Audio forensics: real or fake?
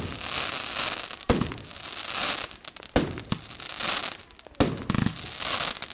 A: real